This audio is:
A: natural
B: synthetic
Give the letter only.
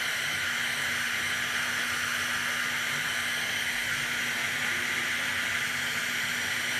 A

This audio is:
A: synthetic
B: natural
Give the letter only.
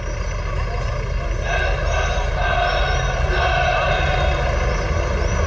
B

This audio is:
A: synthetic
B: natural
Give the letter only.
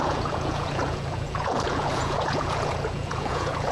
A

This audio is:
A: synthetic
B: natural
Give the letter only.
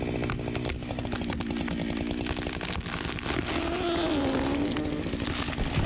B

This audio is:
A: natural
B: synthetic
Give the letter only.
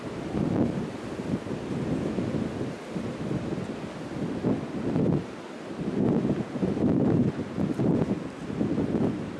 A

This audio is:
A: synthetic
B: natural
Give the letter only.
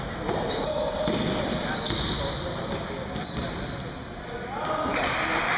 B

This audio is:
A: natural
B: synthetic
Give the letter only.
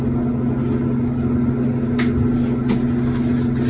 A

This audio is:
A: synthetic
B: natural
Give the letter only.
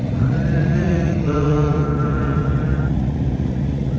A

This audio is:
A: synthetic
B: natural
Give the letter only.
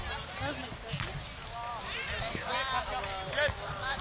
B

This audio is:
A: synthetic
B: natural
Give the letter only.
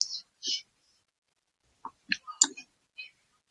B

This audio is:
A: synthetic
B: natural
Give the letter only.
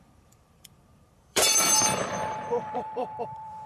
A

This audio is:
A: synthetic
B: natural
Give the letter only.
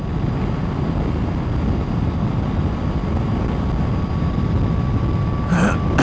B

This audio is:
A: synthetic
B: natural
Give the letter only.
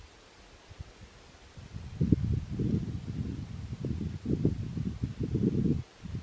B